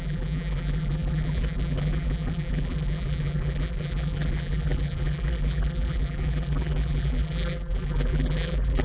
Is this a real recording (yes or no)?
no